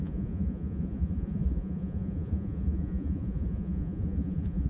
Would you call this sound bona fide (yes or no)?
no